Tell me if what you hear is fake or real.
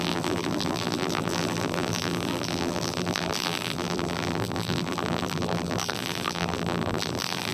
fake